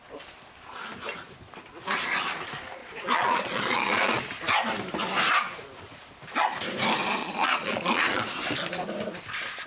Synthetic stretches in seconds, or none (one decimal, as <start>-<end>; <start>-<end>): 2.8-4.2; 7.2-8.4